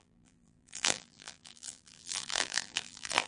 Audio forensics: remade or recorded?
remade